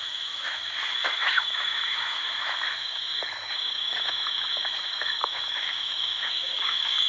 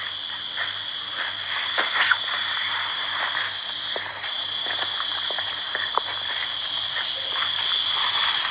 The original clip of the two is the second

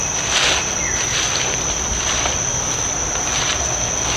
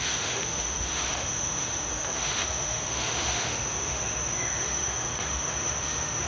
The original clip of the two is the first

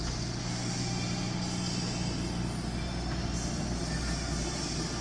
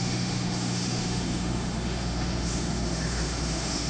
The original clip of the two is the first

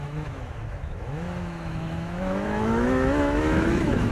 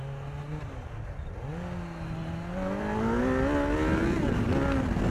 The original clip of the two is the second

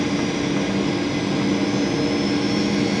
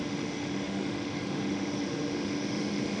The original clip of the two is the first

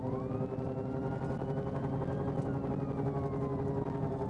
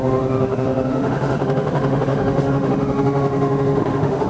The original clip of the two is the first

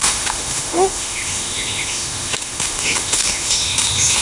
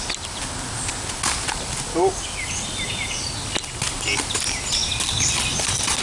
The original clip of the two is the second